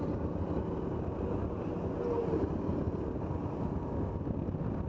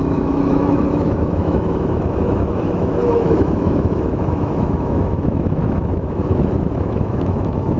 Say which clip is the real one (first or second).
first